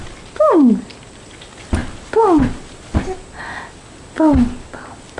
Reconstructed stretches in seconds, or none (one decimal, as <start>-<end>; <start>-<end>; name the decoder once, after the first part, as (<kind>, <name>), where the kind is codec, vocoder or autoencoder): none

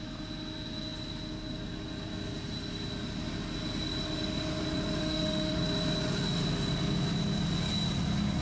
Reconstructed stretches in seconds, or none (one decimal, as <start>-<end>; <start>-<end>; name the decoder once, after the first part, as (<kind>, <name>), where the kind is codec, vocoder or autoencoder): 5.0-5.6 (autoencoder, DAC-VAE)

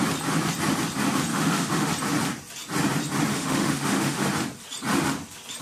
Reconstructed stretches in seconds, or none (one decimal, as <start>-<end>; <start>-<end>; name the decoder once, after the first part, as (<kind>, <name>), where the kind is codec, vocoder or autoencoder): 1.3-1.9 (autoencoder, DAC-VAE); 3.3-4.2